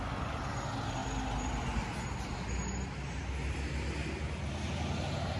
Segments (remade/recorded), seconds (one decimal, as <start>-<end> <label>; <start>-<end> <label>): 0.0-5.4 recorded